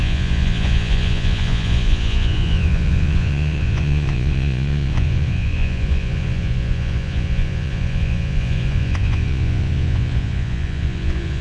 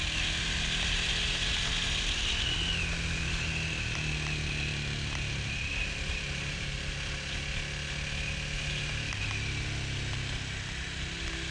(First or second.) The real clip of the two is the second